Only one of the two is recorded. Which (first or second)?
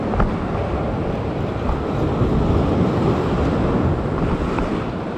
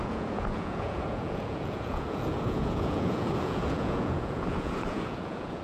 first